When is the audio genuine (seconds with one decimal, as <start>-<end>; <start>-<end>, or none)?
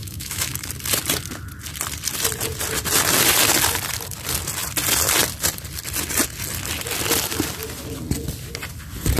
0.7-9.2